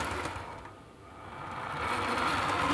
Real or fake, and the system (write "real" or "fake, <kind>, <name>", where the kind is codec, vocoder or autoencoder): real